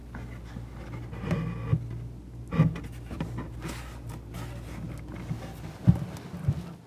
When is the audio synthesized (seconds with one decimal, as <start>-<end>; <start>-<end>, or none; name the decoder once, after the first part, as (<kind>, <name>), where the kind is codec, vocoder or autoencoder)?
none